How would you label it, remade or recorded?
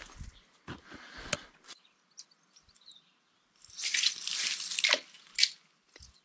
recorded